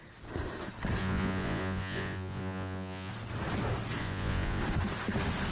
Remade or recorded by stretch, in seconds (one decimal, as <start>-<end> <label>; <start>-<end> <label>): 0.0-1.0 recorded; 1.0-3.1 remade; 3.1-4.0 recorded; 4.0-4.6 remade; 4.6-5.5 recorded